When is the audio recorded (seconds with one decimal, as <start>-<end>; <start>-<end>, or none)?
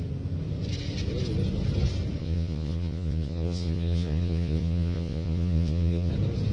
0.0-2.2; 6.1-6.5